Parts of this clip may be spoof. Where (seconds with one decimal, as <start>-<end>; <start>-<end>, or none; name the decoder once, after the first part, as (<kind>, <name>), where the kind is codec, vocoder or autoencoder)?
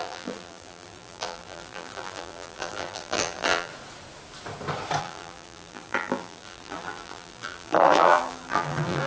0.0-3.7 (vocoder, BigVGAN v2); 5.0-9.1